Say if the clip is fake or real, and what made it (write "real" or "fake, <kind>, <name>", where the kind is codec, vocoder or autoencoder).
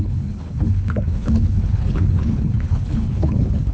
fake, codec, HILCodec